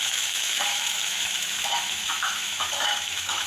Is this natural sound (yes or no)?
no